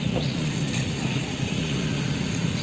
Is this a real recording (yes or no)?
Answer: no